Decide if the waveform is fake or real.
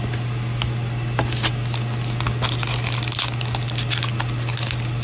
real